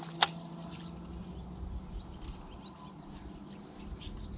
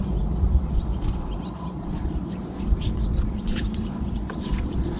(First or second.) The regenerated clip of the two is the second